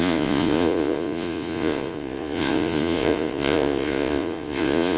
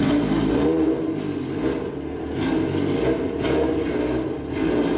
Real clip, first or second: second